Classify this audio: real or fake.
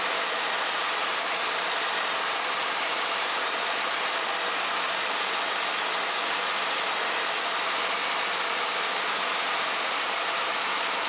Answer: real